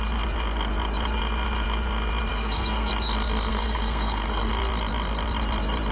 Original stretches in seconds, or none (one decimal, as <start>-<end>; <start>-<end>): 0.0-2.3; 2.9-3.5; 4.5-5.9